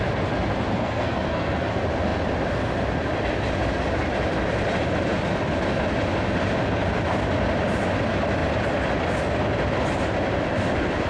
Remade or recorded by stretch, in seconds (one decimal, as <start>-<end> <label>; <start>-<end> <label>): 0.0-0.7 recorded; 0.7-1.7 remade; 1.7-11.1 recorded